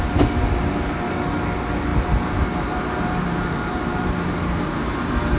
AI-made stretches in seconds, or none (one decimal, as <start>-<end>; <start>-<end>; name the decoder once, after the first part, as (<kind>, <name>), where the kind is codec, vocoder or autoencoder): 1.9-5.4 (vocoder, BigVGAN v2)